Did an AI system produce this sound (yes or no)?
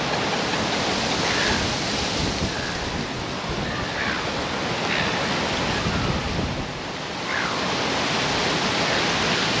no